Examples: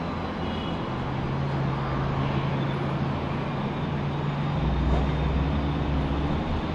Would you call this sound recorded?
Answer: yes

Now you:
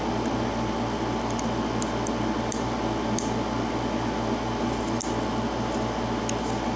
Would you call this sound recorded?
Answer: yes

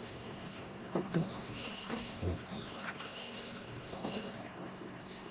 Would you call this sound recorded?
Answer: no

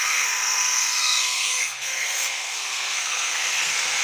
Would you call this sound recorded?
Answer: no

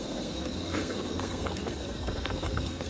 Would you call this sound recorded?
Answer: no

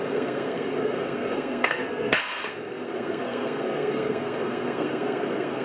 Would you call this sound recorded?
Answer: no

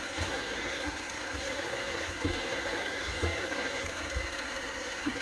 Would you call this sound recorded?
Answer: no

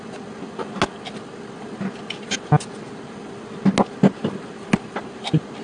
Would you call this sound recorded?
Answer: yes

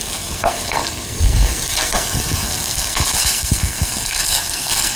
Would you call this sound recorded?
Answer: no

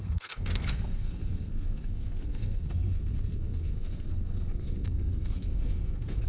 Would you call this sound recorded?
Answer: no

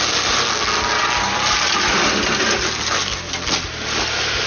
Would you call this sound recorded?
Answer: yes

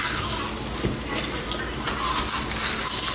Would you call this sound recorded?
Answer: yes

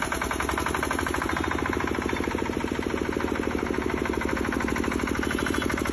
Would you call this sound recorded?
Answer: yes